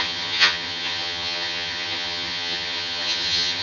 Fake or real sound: fake